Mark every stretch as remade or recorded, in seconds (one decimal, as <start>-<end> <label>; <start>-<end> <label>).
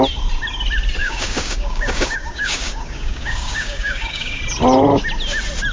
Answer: 0.0-1.0 recorded; 1.0-4.4 remade; 4.4-5.7 recorded